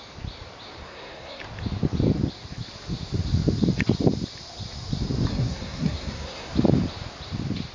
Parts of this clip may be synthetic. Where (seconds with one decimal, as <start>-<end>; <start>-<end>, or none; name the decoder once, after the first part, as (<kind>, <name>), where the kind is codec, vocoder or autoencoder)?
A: 0.8-1.4 (codec, SNAC); 5.3-6.5